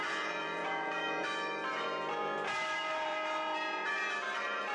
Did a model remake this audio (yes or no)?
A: yes